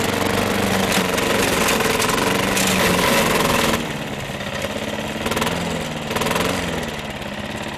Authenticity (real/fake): real